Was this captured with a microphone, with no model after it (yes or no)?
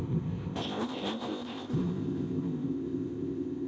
no